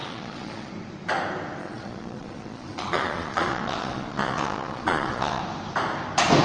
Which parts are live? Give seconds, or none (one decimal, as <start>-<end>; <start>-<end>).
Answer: 0.7-1.6; 5.4-6.4